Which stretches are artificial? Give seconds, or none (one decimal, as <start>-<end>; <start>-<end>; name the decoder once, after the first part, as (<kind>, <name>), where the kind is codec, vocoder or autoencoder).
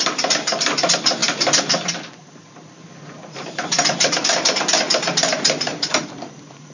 5.7-6.3 (vocoder, BigVGAN v2)